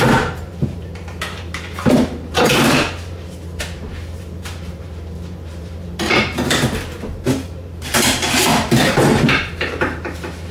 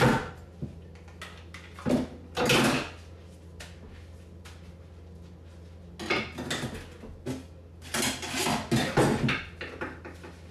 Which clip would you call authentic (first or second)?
second